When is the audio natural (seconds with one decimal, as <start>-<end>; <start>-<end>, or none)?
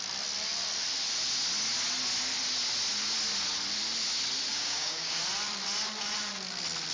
0.0-4.5; 5.2-6.9